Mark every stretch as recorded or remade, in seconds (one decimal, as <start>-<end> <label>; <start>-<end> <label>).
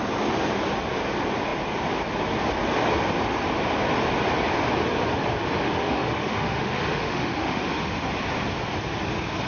0.0-5.6 recorded; 5.6-8.0 remade; 8.0-9.5 recorded